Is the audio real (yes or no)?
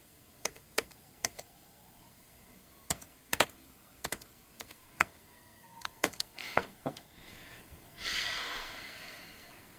no